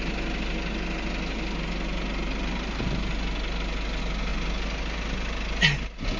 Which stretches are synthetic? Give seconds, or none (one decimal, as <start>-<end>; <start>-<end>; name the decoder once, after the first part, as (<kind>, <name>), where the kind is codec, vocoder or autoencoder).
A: none